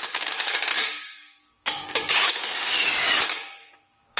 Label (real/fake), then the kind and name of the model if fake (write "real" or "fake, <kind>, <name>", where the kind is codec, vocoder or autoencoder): fake, codec, DAC